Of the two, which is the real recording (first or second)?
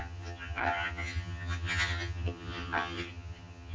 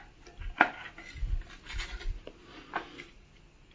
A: second